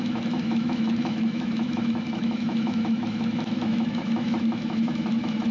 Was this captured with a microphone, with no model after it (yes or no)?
no